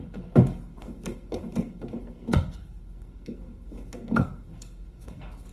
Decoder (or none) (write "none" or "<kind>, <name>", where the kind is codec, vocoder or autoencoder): codec, SNAC